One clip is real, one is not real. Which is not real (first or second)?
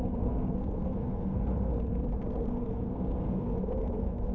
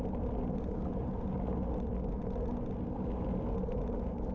first